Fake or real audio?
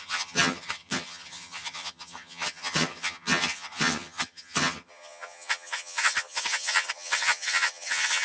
fake